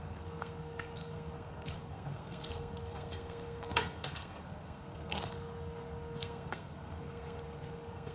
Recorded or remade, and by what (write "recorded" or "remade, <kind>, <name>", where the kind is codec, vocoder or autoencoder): remade, codec, SNAC